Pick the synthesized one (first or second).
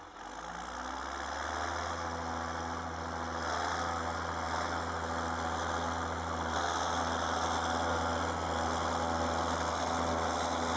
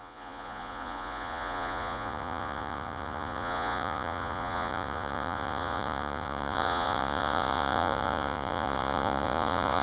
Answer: second